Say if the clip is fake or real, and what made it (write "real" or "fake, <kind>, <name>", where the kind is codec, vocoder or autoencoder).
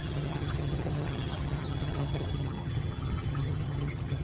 fake, vocoder, HiFi-GAN